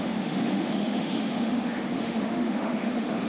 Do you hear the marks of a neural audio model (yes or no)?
yes